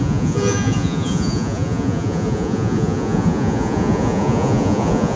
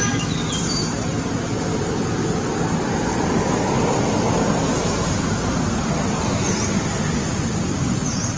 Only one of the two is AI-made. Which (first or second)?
first